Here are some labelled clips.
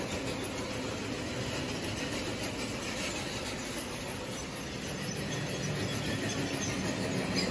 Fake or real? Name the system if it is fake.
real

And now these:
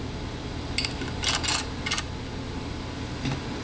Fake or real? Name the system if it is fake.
real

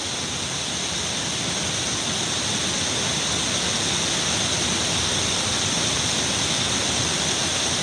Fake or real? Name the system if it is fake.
real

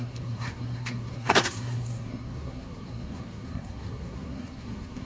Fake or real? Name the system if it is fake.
fake, codec, SNAC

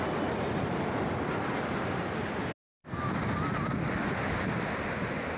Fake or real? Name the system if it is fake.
real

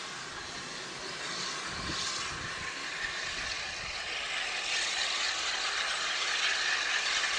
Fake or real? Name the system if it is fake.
real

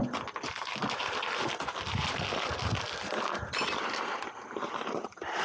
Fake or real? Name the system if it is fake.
real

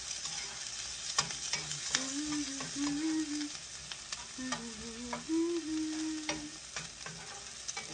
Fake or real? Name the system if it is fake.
real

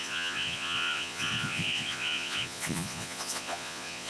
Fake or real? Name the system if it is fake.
fake, vocoder, Vocos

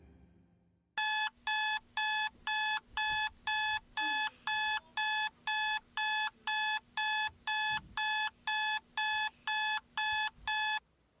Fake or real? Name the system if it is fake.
real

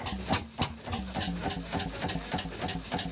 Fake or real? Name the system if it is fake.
real